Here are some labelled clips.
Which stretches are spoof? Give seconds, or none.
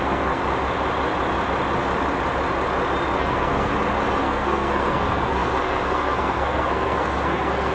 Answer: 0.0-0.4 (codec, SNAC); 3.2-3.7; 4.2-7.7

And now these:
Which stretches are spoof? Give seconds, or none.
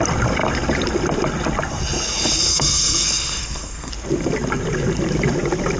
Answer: 2.5-3.9 (codec, SNAC)